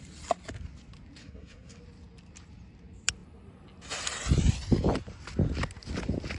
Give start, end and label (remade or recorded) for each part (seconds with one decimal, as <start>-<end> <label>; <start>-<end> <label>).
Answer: 0.0-1.2 recorded; 1.2-1.8 remade; 1.8-6.4 recorded